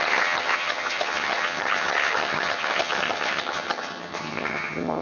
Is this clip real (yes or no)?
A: no